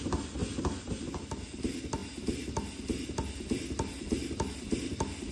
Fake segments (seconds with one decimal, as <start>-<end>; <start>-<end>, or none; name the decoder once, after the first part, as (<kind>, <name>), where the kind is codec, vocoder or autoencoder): none